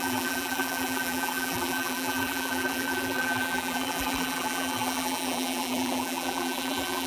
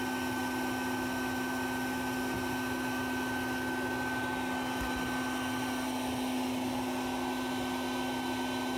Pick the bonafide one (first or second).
second